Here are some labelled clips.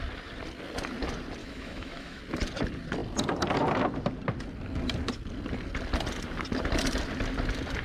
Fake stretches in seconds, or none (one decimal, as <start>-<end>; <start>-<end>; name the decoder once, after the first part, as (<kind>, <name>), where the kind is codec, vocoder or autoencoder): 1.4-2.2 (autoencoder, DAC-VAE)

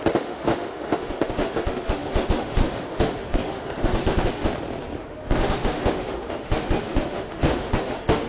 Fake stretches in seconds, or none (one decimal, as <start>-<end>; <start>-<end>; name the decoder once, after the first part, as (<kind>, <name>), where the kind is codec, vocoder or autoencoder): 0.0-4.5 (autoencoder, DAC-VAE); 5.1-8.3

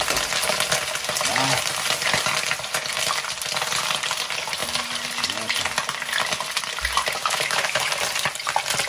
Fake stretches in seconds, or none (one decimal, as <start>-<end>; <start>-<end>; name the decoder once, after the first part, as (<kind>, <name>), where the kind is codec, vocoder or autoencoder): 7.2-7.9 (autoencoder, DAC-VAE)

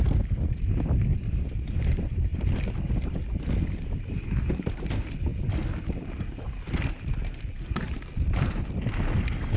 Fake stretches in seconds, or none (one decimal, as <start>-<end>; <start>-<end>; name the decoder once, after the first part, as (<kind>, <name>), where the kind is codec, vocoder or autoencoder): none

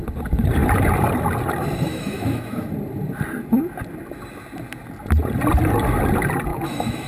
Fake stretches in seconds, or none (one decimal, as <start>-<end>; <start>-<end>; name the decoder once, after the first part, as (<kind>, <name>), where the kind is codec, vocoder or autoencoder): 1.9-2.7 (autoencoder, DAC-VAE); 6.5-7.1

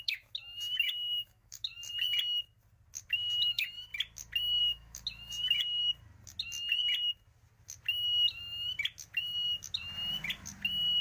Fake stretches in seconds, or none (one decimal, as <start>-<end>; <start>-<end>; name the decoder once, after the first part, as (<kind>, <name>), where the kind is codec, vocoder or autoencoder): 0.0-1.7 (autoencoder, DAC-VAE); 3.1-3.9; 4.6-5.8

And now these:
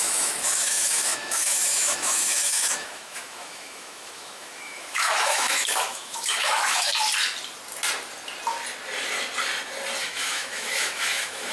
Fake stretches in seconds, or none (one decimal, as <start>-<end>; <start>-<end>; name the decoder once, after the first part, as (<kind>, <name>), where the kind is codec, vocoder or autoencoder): 0.0-6.9 (autoencoder, DAC-VAE); 10.0-11.5